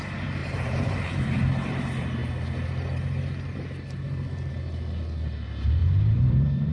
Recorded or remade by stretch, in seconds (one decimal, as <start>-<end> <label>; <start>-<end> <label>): 0.0-0.4 recorded; 0.4-1.1 remade; 1.1-5.8 recorded; 5.8-6.7 remade